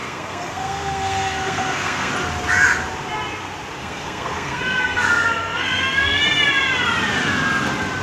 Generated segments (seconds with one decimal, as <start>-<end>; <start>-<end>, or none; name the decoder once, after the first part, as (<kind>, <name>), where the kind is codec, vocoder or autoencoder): 0.0-2.1 (codec, SNAC); 3.8-6.2